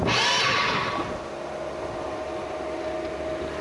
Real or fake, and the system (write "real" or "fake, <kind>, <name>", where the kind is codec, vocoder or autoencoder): real